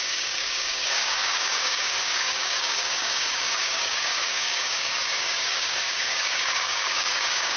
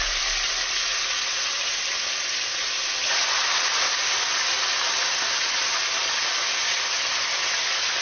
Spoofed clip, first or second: first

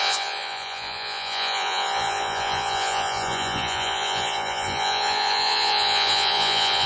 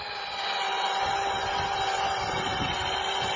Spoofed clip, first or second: first